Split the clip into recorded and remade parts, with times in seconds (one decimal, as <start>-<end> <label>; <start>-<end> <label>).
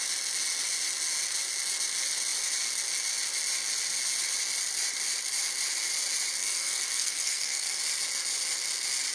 0.0-6.4 recorded; 6.4-7.8 remade; 7.8-9.1 recorded